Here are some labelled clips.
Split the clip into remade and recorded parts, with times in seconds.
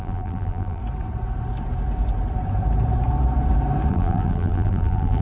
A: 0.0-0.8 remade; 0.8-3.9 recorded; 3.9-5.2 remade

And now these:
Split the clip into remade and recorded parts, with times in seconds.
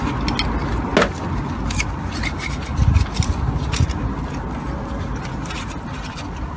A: 0.0-6.6 recorded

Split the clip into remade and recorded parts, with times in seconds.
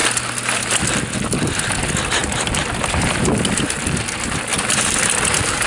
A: 0.0-4.5 recorded; 4.5-5.7 remade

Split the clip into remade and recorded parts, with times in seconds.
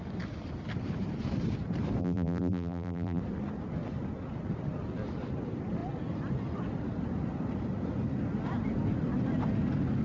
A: 0.0-2.0 recorded; 2.0-3.2 remade; 3.2-10.0 recorded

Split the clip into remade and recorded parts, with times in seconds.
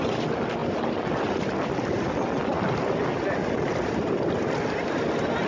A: 0.0-0.6 recorded; 0.6-3.9 remade; 3.9-5.5 recorded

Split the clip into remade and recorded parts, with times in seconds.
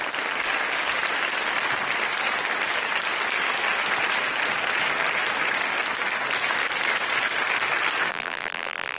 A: 0.0-8.1 recorded; 8.1-9.0 remade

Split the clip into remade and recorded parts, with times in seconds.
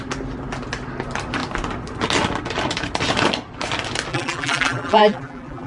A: 0.0-4.1 recorded; 4.1-5.7 remade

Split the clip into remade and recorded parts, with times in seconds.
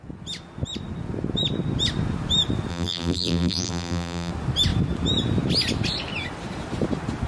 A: 0.0-2.7 recorded; 2.7-4.3 remade; 4.3-7.3 recorded